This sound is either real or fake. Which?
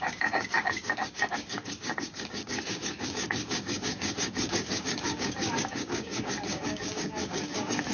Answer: fake